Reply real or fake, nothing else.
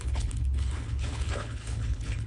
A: fake